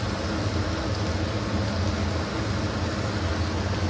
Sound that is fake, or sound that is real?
real